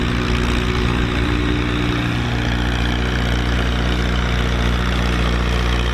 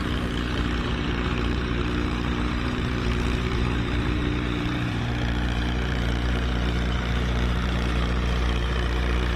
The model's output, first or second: second